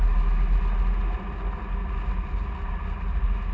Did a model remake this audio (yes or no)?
no